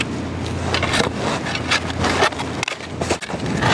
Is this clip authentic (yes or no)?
yes